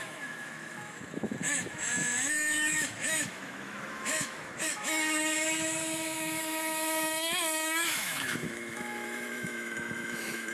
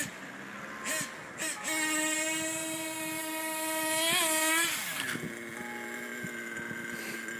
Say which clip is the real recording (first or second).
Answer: second